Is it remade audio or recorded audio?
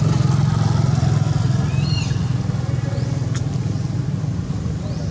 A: recorded